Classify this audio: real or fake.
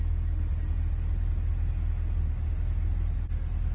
real